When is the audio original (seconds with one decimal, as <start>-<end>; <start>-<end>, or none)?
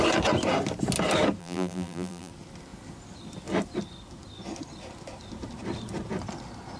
0.0-1.4; 2.3-6.8